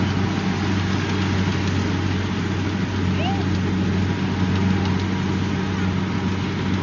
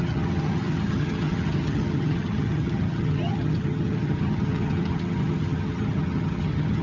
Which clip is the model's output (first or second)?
second